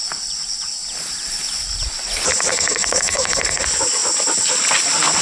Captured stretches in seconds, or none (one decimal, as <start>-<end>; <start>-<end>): 0.0-2.5; 3.6-5.2